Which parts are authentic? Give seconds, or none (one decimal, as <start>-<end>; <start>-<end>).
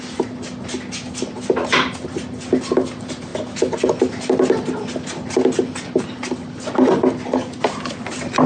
0.0-8.5